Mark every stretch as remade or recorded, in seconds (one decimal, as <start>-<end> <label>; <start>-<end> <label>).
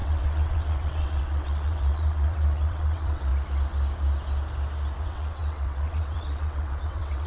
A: 0.0-3.3 remade; 3.3-5.0 recorded; 5.0-7.3 remade